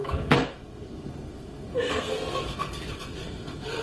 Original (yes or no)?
no